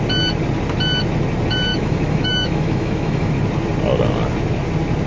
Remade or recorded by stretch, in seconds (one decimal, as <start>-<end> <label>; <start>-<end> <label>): 0.0-1.7 recorded; 1.7-3.3 remade; 3.3-5.1 recorded